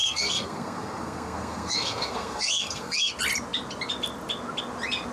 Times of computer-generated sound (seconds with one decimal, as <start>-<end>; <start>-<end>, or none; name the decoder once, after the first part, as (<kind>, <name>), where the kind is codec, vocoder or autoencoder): 0.0-3.1 (codec, SNAC)

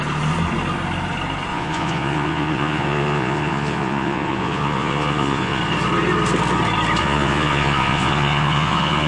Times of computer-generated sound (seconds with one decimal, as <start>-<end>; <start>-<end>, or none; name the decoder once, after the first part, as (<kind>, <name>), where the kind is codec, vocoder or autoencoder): 1.5-5.6 (vocoder, Vocos); 7.0-9.1

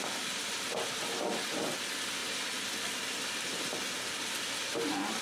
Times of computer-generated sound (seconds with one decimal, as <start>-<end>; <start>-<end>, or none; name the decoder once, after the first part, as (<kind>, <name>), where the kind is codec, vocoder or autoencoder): none

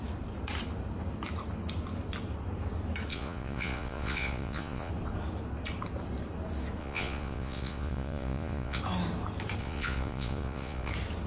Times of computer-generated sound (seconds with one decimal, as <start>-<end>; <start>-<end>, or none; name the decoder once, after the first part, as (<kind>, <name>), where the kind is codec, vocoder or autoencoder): 3.1-4.9 (vocoder, Vocos); 6.8-8.8; 9.6-10.9

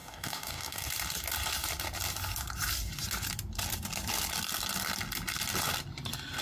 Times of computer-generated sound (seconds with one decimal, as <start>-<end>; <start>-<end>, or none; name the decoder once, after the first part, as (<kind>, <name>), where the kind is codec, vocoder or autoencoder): 0.0-0.9 (codec, DAC)